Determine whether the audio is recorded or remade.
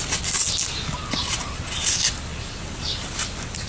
recorded